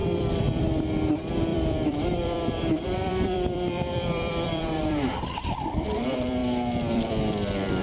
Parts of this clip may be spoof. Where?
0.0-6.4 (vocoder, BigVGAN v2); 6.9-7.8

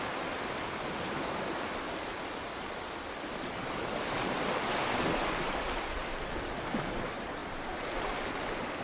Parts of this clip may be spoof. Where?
none

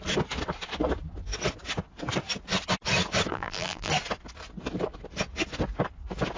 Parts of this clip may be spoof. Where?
3.3-3.9 (vocoder, BigVGAN v2)

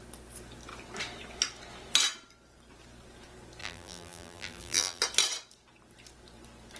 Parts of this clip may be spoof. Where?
3.6-5.0 (vocoder, BigVGAN v2)

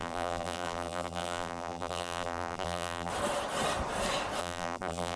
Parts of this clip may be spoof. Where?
0.0-3.1 (vocoder, BigVGAN v2); 4.4-5.2

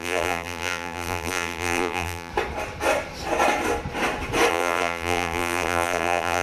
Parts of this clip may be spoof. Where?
0.0-2.3 (vocoder, BigVGAN v2); 4.5-6.4

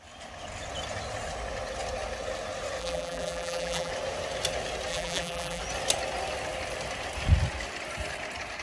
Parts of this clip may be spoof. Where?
2.8-3.9 (vocoder, BigVGAN v2); 4.9-5.6

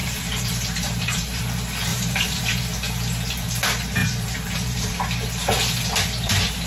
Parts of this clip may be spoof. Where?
0.0-1.4 (vocoder, BigVGAN v2); 1.9-2.6; 4.0-5.0